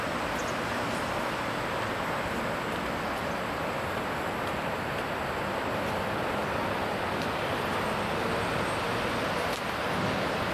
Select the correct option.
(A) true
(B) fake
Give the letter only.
A